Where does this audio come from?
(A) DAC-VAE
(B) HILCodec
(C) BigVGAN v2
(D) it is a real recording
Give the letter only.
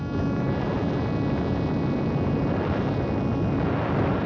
D